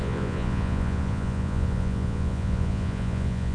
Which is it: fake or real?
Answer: fake